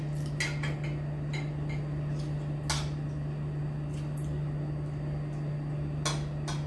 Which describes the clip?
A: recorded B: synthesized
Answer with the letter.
A